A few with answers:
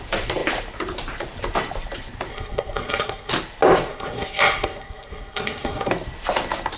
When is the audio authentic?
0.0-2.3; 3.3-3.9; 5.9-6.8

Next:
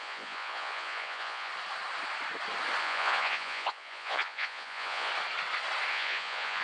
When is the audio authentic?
1.5-2.8; 5.1-5.9

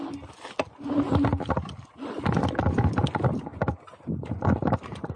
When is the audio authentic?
0.0-5.2

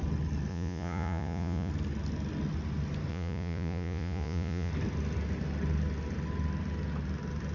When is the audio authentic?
0.0-0.5; 1.7-3.1; 4.7-7.5

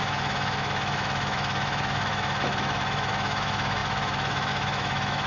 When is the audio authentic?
none